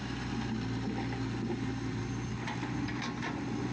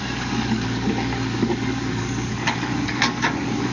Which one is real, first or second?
first